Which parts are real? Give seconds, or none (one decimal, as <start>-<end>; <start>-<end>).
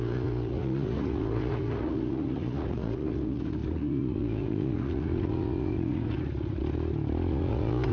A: 6.6-7.3